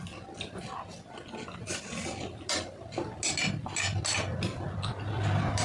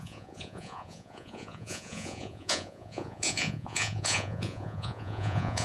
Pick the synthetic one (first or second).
second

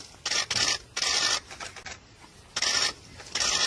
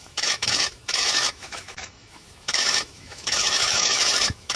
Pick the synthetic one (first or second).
second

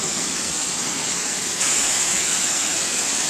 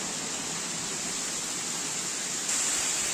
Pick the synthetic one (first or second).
first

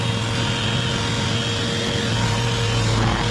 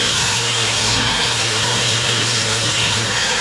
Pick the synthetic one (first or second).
second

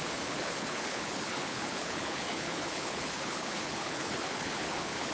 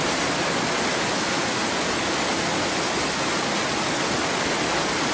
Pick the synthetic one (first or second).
first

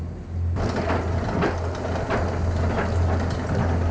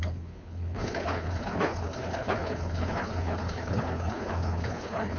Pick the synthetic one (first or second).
second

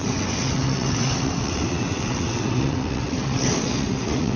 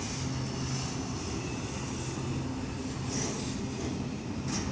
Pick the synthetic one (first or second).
first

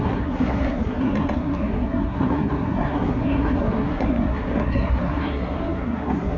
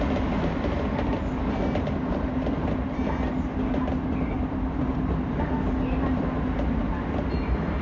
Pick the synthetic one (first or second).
first